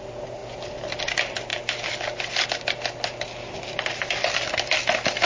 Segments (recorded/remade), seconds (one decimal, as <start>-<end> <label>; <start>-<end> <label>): 0.0-5.3 recorded